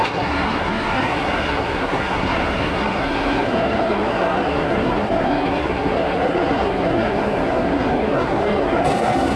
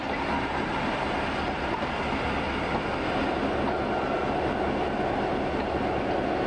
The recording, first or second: second